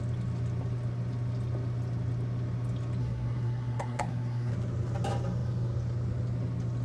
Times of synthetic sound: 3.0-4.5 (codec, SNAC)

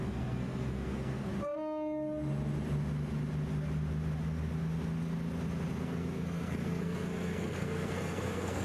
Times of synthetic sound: 0.0-1.3 (codec, SNAC); 5.8-8.6

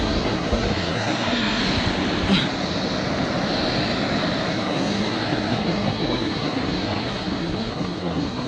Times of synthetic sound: 0.0-1.6 (codec, SNAC); 4.5-8.5

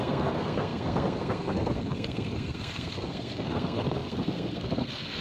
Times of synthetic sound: 0.0-5.2 (codec, SNAC)